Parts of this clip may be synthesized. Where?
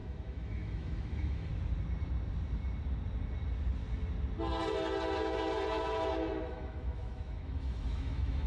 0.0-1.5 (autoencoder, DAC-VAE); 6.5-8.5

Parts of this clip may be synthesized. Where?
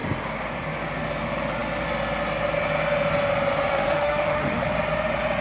3.7-4.7 (autoencoder, DAC-VAE)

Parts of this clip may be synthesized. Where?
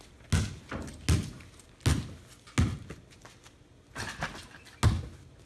none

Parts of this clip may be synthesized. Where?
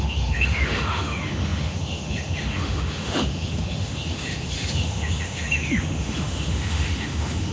0.0-7.5 (autoencoder, DAC-VAE)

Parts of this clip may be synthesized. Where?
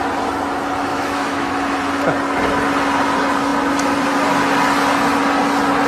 0.9-1.5 (autoencoder, DAC-VAE)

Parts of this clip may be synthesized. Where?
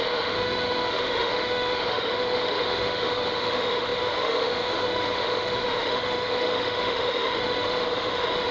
0.0-8.5 (autoencoder, DAC-VAE)